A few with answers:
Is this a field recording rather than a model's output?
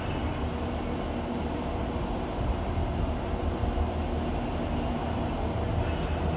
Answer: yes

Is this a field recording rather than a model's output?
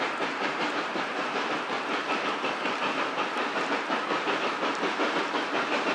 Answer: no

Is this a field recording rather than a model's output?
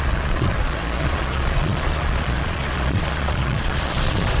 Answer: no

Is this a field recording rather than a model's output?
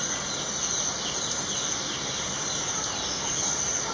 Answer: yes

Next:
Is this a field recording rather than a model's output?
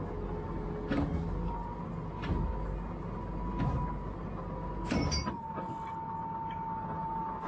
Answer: yes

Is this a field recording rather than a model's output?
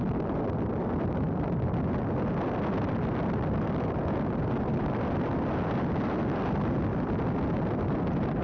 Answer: yes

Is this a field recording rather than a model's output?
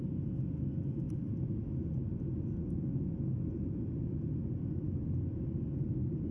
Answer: yes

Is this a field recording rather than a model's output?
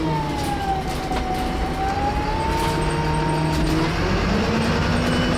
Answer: yes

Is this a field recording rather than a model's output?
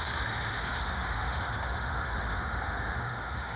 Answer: no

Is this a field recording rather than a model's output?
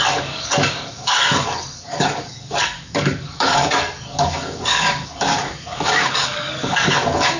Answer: no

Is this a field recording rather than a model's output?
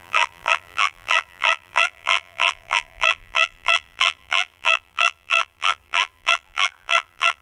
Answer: no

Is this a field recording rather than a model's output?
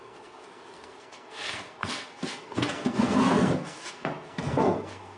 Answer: no